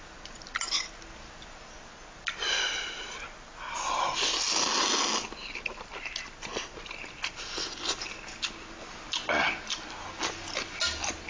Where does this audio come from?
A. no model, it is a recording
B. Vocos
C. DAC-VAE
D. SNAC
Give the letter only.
A